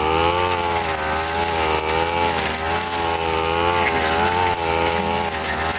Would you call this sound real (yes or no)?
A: yes